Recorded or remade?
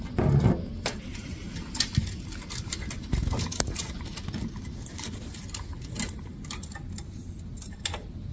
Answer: recorded